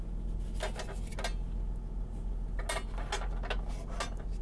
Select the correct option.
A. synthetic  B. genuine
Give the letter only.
B